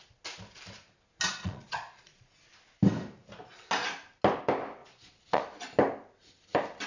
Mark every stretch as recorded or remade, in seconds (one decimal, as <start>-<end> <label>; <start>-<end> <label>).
0.0-1.3 recorded; 1.3-2.4 remade; 2.4-4.8 recorded; 4.8-5.4 remade; 5.4-6.9 recorded